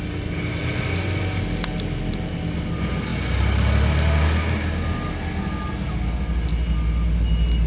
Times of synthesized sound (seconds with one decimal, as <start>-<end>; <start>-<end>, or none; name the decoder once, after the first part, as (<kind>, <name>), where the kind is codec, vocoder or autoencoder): none